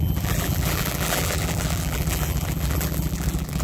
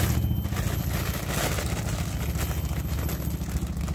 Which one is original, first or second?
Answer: second